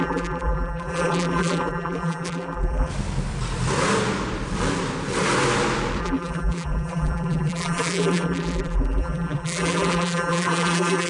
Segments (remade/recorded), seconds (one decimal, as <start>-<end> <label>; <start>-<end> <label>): 0.0-2.9 remade; 2.9-6.0 recorded; 6.0-11.1 remade